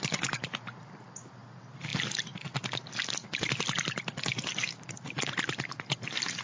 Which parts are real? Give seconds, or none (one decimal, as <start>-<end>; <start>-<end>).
0.0-6.4